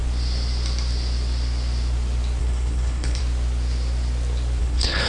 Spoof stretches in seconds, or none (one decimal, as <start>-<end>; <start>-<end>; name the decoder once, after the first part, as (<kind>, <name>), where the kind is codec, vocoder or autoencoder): 2.4-3.2 (codec, HILCodec); 4.6-5.1